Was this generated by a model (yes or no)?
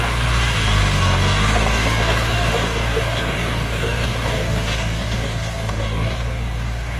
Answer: yes